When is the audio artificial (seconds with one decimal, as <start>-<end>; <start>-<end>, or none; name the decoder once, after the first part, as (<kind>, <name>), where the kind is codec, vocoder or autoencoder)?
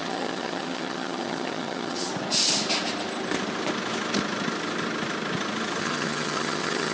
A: 0.0-2.1 (vocoder, HiFi-GAN); 5.8-6.9